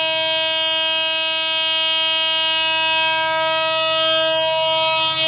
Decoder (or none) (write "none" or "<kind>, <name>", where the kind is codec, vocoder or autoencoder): none